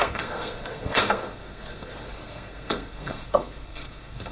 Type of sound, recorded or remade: remade